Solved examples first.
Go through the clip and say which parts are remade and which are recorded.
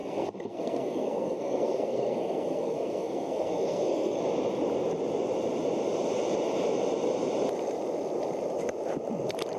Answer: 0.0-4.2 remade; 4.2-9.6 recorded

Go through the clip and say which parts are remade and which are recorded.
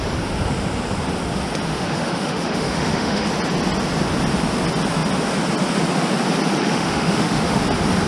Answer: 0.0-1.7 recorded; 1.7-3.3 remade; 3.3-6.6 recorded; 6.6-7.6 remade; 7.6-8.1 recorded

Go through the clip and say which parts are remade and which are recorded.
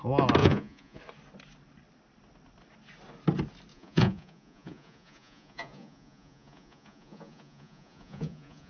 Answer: 0.0-0.4 recorded; 0.4-1.0 remade; 1.0-3.7 recorded; 3.7-8.7 remade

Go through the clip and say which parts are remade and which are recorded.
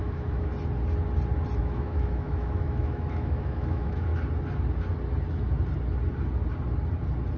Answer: 0.0-0.5 remade; 0.5-1.6 recorded; 1.6-4.1 remade; 4.1-7.4 recorded